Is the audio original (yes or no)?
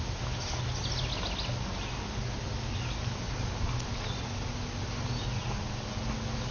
yes